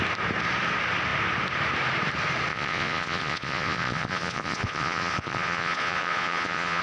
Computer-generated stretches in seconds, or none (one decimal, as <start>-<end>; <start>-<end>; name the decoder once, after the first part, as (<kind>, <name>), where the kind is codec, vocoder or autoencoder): 2.5-6.8 (vocoder, Vocos)